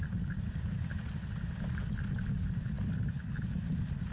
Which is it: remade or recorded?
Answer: recorded